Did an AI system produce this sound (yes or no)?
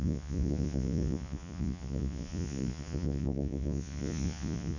yes